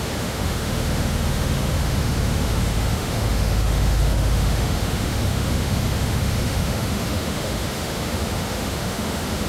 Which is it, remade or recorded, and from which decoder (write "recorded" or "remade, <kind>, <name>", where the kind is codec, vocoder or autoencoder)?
remade, autoencoder, DAC-VAE